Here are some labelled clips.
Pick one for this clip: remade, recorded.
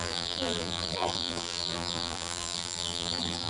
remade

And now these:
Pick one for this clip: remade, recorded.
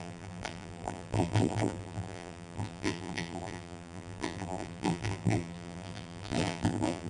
remade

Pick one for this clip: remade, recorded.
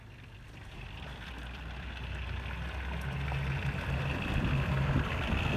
recorded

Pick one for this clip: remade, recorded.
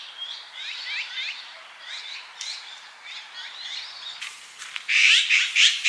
remade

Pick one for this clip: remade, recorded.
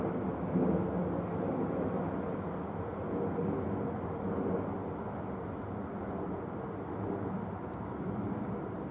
recorded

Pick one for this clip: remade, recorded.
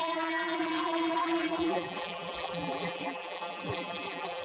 remade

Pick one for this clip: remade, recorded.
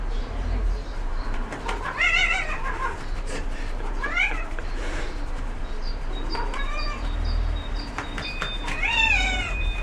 remade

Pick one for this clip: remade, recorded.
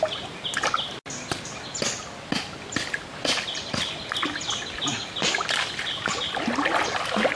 recorded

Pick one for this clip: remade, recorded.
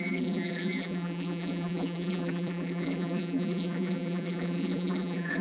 remade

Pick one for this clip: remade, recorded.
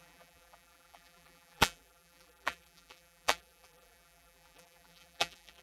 remade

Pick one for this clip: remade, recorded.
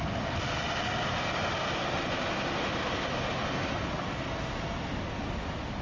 recorded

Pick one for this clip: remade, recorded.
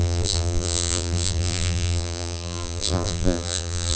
remade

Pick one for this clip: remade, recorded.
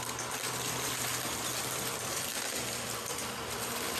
remade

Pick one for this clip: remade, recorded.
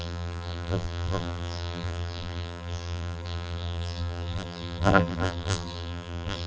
remade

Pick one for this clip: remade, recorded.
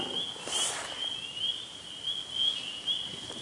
recorded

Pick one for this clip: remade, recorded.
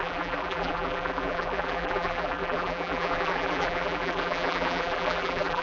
remade